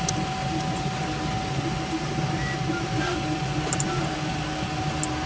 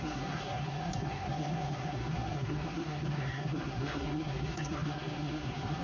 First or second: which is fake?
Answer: second